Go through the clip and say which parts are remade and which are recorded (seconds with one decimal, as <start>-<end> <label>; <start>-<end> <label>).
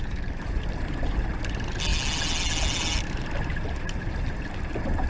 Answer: 0.0-5.1 recorded